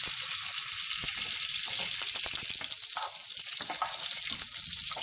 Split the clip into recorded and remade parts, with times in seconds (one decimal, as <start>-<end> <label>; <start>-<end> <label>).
0.0-5.0 recorded